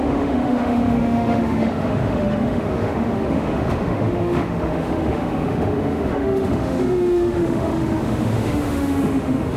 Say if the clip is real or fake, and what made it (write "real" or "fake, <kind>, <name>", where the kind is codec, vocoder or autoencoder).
fake, autoencoder, DAC-VAE